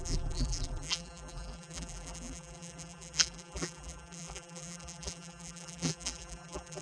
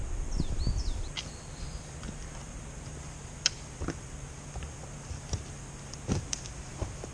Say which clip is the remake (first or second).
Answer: first